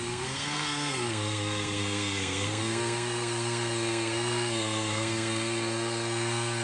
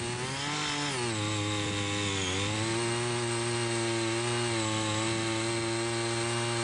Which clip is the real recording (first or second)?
second